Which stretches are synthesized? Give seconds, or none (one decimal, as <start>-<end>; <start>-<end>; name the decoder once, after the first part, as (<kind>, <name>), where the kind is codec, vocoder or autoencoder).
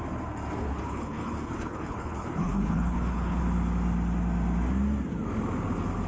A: 0.6-3.4 (codec, HILCodec)